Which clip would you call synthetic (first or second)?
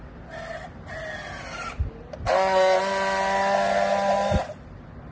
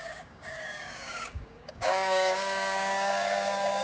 second